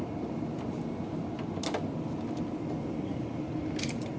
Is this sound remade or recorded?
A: recorded